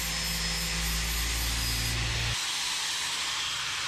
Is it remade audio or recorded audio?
recorded